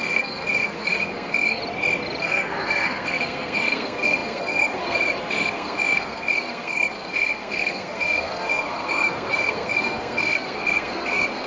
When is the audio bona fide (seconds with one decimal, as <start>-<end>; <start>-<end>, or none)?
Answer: 1.6-2.2